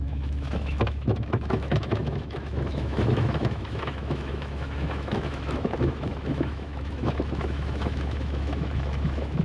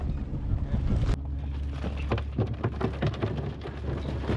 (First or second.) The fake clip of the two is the first